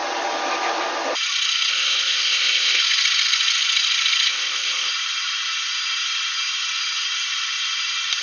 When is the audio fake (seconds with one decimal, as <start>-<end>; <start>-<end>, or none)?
1.7-2.8; 4.3-4.9